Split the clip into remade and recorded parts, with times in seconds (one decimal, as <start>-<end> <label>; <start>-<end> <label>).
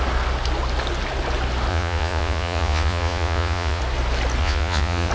0.0-1.7 recorded; 1.7-3.8 remade; 3.8-4.4 recorded; 4.4-5.1 remade